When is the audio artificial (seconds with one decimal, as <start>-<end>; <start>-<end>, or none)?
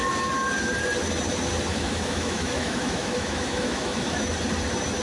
1.7-4.2